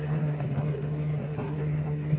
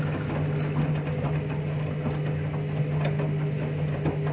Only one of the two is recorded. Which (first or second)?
second